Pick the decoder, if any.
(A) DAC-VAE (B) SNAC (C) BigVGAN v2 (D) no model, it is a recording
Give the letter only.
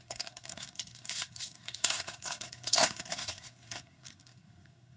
B